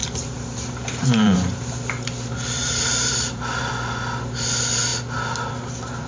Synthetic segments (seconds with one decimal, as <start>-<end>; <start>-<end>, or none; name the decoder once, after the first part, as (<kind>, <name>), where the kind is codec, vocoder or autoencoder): 0.0-3.7 (vocoder, BigVGAN v2)